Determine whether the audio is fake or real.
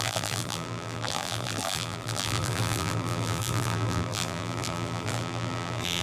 fake